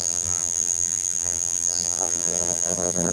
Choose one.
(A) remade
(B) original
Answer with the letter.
A